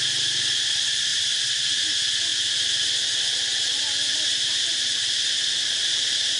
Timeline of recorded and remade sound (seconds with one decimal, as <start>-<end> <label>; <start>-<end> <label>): 0.0-6.4 remade